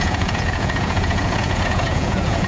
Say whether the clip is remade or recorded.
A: remade